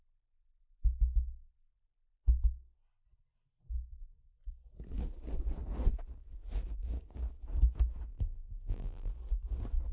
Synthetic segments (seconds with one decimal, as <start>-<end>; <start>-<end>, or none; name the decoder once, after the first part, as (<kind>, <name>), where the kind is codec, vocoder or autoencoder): 8.1-9.1 (vocoder, BigVGAN v2)